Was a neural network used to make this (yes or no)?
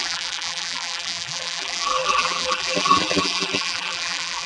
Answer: yes